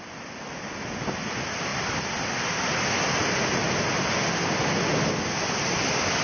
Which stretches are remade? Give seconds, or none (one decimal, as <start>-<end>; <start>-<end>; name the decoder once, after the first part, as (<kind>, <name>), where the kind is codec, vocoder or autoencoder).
none

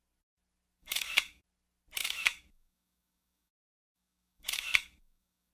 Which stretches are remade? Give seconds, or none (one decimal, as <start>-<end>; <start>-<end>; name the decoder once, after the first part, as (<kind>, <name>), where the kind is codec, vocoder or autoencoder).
0.8-1.4 (codec, DAC); 2.0-5.5